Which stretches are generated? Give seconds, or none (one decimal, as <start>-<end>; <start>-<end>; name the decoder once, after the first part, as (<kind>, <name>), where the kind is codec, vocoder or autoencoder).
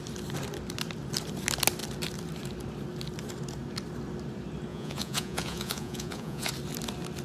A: 4.7-6.5 (vocoder, Vocos)